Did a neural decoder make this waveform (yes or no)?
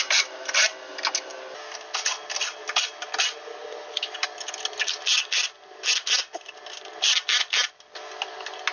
no